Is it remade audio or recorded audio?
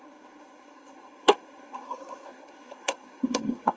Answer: remade